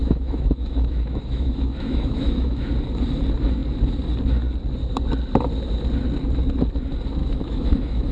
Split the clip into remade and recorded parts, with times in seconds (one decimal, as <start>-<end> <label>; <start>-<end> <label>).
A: 0.0-2.7 remade; 2.7-7.2 recorded; 7.2-8.1 remade